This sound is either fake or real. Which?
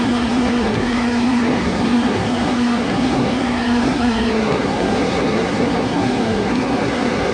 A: fake